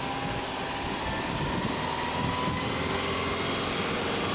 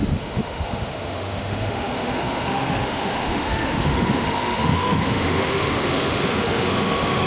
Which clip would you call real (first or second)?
first